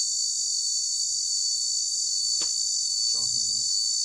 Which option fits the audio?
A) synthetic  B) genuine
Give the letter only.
B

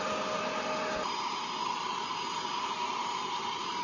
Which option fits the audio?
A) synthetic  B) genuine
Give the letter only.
B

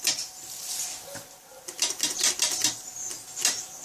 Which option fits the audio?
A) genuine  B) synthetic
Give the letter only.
A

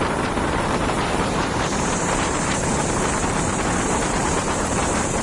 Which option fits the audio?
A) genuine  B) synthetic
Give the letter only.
B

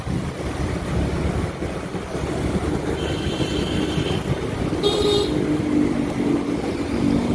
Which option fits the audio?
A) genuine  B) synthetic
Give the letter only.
A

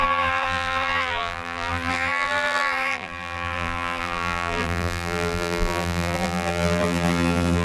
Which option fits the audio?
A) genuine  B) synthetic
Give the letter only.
B